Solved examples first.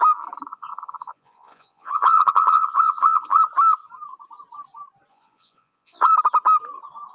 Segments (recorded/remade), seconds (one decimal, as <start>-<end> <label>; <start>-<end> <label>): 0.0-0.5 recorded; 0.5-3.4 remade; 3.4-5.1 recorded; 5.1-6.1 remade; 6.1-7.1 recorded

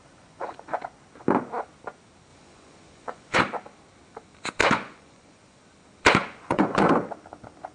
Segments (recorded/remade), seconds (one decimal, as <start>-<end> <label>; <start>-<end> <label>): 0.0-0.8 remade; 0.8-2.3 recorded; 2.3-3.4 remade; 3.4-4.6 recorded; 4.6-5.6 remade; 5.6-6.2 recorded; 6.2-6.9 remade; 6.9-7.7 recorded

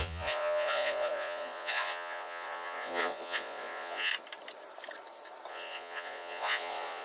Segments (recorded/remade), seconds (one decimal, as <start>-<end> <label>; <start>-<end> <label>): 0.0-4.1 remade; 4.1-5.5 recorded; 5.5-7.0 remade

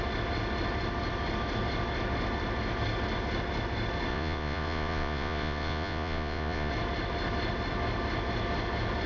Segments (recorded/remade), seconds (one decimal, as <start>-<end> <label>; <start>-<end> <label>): 0.0-4.1 recorded; 4.1-6.7 remade; 6.7-9.1 recorded